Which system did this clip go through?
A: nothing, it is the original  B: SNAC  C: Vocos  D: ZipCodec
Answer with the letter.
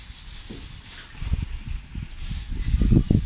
A